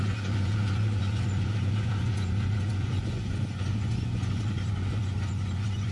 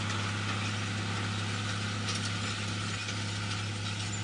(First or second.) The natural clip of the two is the second